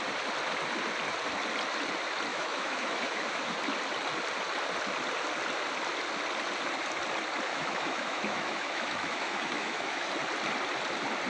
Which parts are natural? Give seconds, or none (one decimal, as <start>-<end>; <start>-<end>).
0.0-2.3; 3.5-7.5; 10.1-11.3